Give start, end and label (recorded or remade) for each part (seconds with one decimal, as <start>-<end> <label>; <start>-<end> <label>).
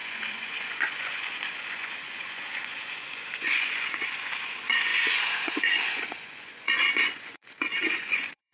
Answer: 0.0-8.5 remade